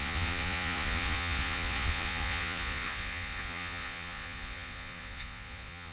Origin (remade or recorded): remade